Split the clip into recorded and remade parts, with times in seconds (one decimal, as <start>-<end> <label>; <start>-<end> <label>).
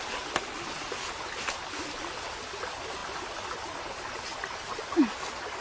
0.0-5.6 recorded